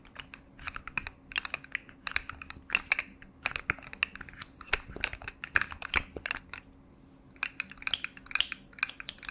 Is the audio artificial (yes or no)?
no